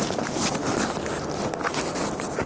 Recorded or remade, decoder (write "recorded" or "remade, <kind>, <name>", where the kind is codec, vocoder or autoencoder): recorded